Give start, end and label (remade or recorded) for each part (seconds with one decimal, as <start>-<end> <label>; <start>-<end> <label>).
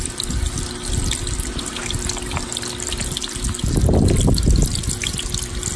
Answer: 0.0-5.8 recorded